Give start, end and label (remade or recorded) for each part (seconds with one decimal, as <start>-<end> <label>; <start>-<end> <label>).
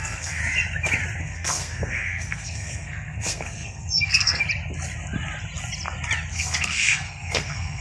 0.0-0.4 remade; 0.4-1.2 recorded; 1.2-4.4 remade; 4.4-6.3 recorded; 6.3-7.8 remade